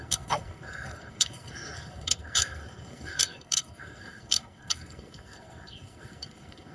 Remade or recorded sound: remade